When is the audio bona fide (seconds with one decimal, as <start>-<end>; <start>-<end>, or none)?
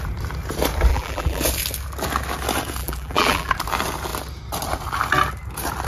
0.0-0.9; 1.4-2.8; 3.5-5.9